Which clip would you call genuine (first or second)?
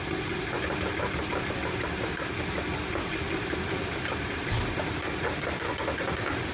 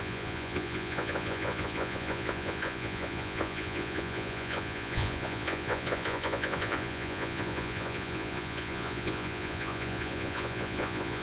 first